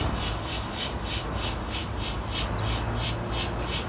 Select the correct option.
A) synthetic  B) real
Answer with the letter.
B